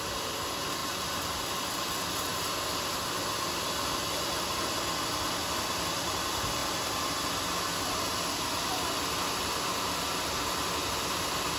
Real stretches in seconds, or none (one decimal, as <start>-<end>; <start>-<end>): 0.0-0.8; 1.8-11.6